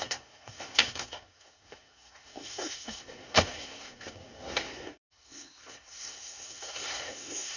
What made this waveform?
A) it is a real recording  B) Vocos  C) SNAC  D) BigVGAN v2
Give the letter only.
C